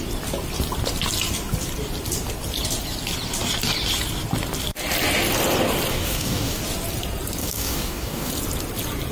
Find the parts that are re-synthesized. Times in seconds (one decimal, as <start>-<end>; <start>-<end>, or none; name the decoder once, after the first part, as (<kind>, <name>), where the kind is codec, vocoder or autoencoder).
5.9-6.6 (codec, DAC); 7.4-8.3